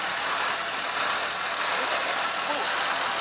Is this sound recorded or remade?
recorded